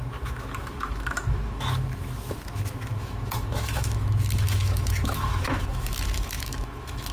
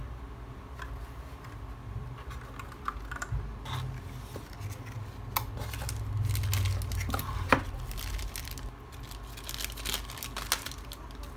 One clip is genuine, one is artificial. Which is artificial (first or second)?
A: first